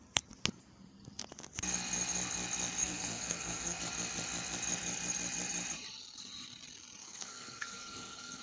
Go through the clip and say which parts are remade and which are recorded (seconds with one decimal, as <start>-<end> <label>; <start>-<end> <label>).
0.0-2.8 recorded; 2.8-3.8 remade; 3.8-7.0 recorded; 7.0-8.4 remade